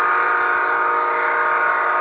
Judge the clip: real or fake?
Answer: real